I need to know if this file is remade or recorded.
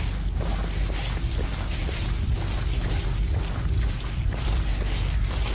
recorded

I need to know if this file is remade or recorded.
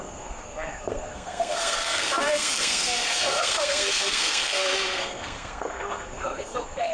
remade